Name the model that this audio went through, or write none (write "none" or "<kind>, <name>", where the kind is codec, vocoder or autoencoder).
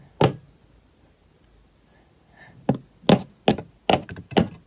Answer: none